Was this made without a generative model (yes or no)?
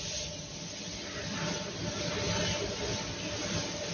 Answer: yes